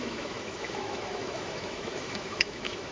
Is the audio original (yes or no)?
no